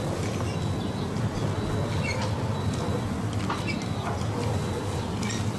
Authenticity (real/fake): real